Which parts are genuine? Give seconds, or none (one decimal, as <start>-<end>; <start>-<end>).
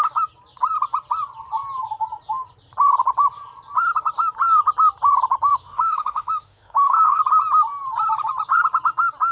0.0-5.5; 7.2-9.3